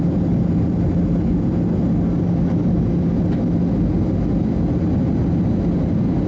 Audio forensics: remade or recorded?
recorded